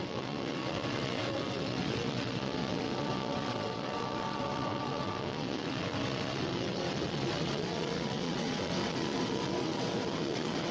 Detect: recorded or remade remade